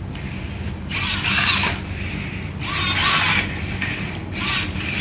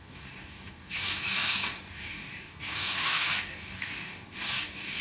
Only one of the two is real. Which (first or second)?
first